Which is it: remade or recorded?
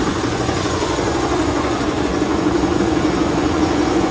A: remade